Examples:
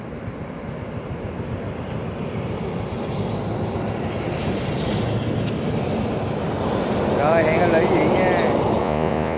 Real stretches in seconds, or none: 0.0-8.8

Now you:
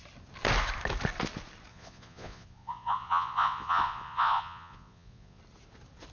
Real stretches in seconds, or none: 0.0-1.7; 5.4-6.1